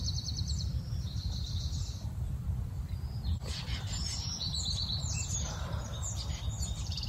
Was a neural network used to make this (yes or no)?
yes